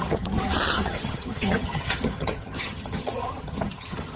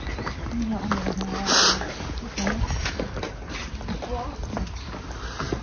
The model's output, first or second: first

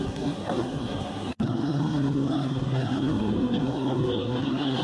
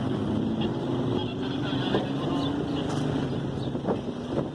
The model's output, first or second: first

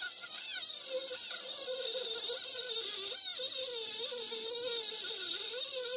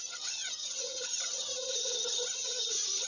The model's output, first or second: second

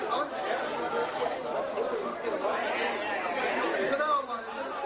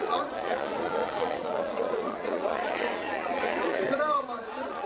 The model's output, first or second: second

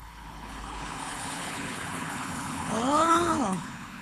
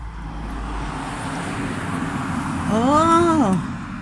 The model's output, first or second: first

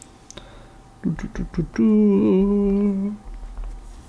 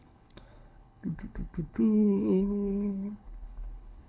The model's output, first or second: second